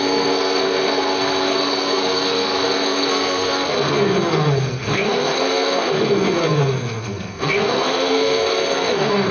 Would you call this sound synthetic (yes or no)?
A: yes